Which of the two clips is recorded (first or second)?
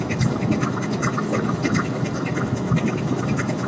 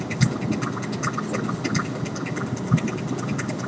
second